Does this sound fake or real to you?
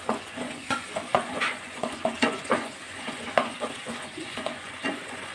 fake